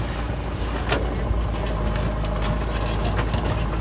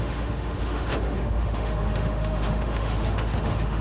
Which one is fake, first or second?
second